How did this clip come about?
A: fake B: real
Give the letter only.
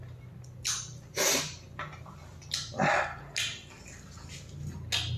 B